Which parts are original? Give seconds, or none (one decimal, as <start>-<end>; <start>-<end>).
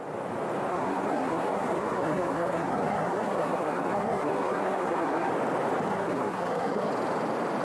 0.0-0.7; 5.3-5.9; 6.9-7.6